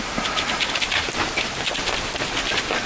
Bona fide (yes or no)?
yes